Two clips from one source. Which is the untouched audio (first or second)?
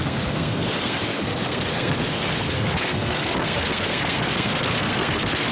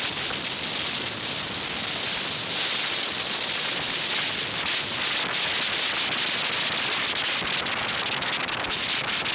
second